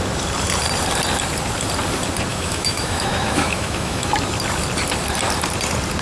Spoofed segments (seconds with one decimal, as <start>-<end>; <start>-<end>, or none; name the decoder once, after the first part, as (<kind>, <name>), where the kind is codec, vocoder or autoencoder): 2.3-4.1 (autoencoder, DAC-VAE)